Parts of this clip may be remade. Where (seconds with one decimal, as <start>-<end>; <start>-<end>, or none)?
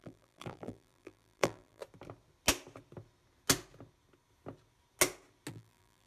0.0-1.8; 5.5-6.1